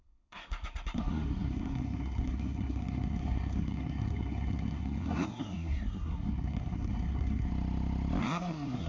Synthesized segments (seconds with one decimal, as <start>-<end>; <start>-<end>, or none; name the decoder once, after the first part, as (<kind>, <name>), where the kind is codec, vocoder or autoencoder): 0.0-7.5 (codec, SNAC); 8.2-8.9